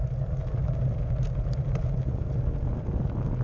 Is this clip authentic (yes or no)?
yes